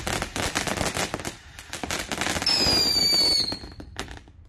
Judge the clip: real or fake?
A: real